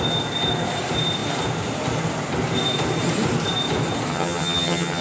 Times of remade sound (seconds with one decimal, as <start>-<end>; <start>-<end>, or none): 4.1-5.0